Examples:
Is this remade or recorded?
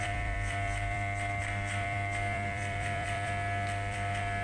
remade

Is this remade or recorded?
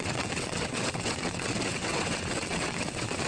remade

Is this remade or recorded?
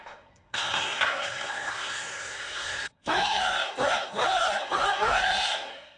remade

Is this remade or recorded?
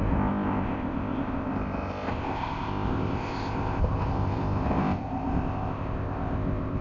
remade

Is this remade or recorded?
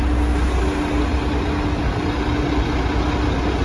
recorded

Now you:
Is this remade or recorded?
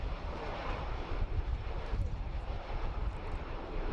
remade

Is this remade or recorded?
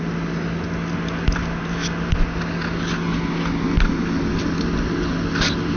recorded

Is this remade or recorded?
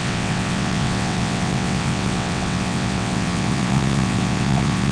remade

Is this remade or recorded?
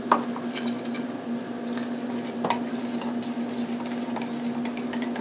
recorded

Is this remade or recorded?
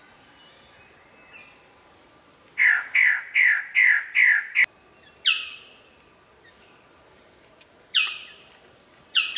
recorded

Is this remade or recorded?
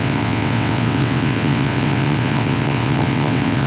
remade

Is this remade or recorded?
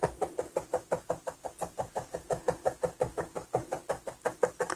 recorded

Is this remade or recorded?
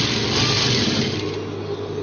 recorded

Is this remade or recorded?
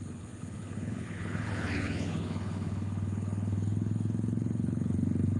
remade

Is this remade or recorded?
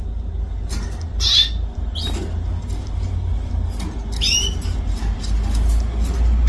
recorded